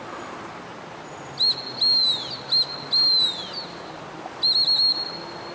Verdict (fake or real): real